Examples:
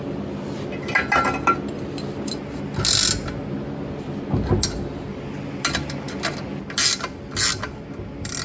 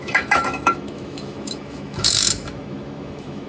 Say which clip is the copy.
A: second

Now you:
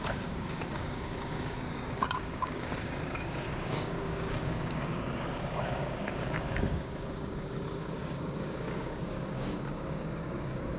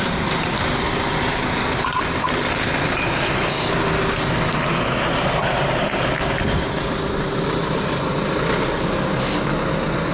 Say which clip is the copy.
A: first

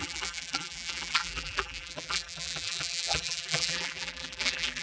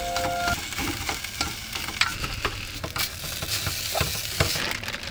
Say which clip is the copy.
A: first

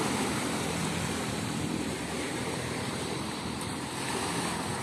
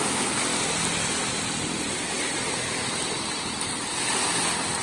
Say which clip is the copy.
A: first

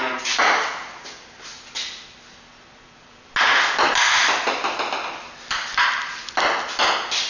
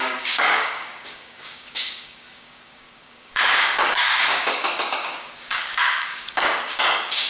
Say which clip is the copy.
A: second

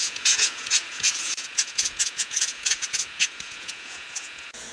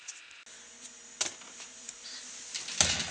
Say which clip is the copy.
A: first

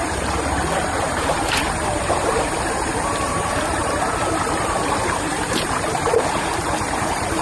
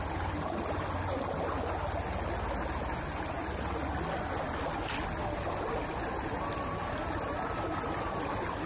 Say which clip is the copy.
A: first